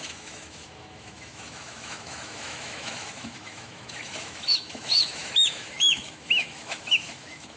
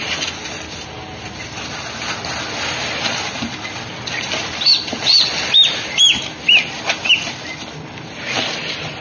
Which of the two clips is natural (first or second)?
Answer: second